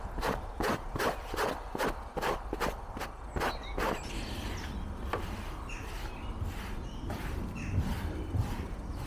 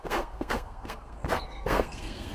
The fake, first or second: second